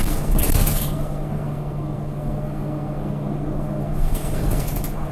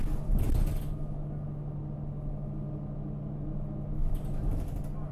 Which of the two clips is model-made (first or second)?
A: first